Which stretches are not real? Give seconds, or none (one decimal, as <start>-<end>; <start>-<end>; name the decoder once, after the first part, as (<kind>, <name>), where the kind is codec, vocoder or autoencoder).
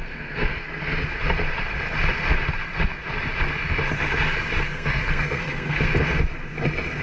0.0-0.5 (codec, SNAC); 4.6-5.9